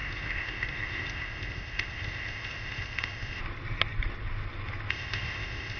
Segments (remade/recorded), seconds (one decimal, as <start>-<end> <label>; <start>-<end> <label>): 0.0-3.4 remade; 3.4-4.9 recorded; 4.9-5.8 remade